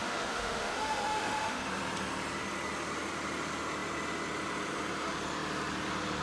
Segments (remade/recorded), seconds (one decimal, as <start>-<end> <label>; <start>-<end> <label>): 0.0-1.6 remade; 1.6-6.2 recorded